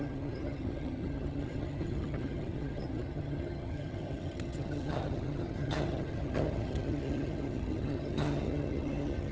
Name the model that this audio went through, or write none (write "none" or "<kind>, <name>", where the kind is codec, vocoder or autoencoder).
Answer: vocoder, HiFi-GAN